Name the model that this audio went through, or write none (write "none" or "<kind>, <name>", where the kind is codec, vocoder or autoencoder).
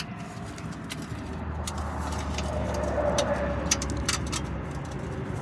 none